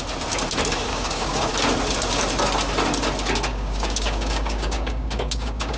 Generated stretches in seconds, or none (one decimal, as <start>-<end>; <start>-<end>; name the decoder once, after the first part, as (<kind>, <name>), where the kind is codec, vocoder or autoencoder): 0.9-1.5 (codec, DAC); 3.5-5.8